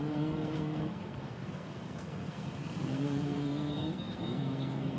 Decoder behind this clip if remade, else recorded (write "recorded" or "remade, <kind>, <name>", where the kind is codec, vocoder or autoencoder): remade, codec, SNAC